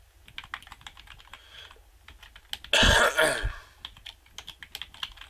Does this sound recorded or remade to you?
recorded